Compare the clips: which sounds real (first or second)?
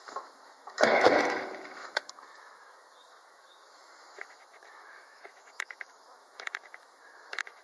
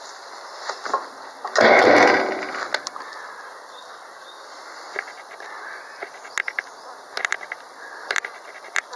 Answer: second